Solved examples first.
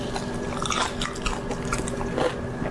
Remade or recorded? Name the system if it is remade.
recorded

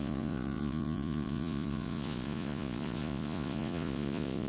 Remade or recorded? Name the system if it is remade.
remade, vocoder, Vocos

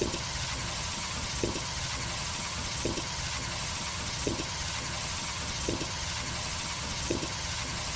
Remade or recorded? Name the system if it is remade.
remade, vocoder, HiFi-GAN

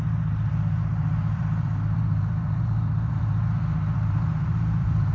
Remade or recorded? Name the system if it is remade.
remade, vocoder, BigVGAN v2